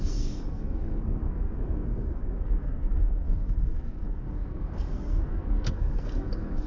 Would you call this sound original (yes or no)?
no